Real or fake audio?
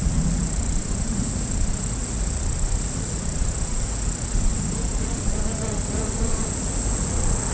fake